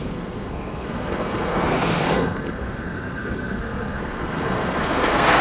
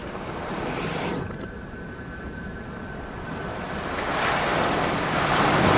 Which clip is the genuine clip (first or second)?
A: second